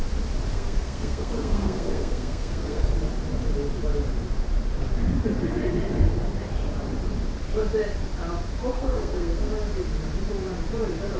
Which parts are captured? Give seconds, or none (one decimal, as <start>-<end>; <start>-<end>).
0.0-0.5; 2.9-8.7; 9.5-11.2